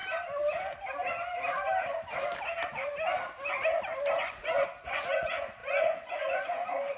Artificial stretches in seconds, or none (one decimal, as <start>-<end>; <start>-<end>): 4.2-7.0